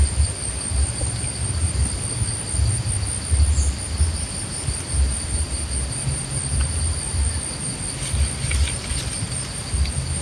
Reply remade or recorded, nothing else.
recorded